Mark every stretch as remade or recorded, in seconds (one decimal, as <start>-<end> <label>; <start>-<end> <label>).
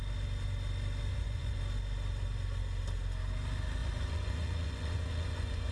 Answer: 0.0-1.1 recorded; 1.1-1.6 remade; 1.6-3.8 recorded; 3.8-5.7 remade